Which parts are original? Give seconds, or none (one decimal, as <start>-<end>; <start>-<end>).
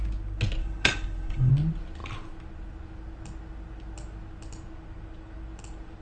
0.0-0.6; 1.5-6.0